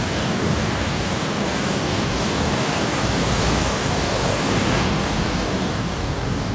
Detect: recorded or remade remade